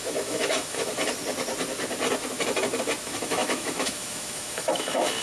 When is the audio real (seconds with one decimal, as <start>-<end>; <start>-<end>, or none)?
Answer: 0.9-3.0